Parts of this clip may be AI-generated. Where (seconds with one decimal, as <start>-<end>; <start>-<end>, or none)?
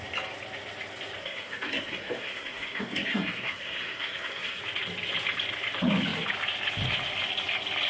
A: 1.2-4.6